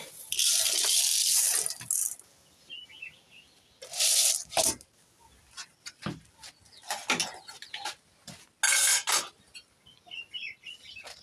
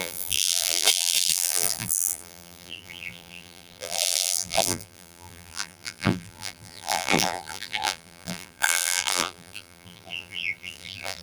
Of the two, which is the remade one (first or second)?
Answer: second